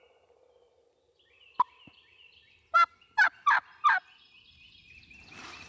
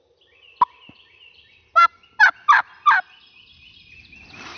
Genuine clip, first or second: second